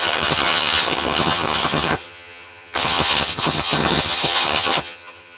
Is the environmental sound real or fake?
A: fake